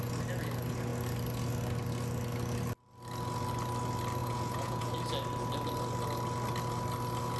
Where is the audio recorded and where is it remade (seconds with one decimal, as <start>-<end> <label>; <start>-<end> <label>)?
0.0-4.2 recorded; 4.2-4.9 remade; 4.9-7.4 recorded